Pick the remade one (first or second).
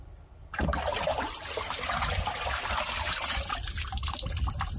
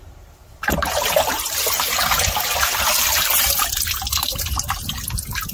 second